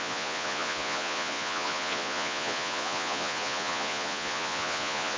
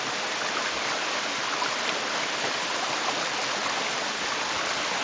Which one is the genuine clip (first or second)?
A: second